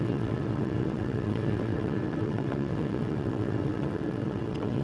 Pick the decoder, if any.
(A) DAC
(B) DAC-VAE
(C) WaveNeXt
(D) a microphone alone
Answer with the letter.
C